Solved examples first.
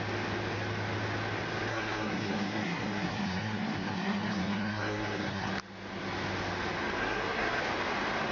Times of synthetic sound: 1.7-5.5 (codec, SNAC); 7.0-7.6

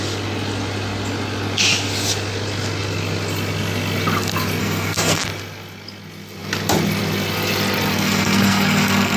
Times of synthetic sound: 4.6-5.2 (codec, SNAC); 7.9-9.2